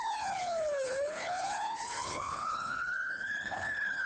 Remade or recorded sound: remade